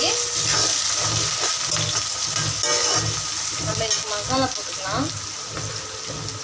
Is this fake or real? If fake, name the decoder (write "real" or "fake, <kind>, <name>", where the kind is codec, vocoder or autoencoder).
real